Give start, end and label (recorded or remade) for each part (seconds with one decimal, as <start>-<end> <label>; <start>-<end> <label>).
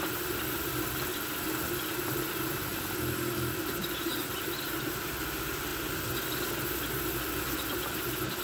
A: 0.0-1.1 remade; 1.1-2.3 recorded; 2.3-2.7 remade; 2.7-3.8 recorded; 3.8-5.7 remade; 5.7-6.8 recorded; 6.8-8.4 remade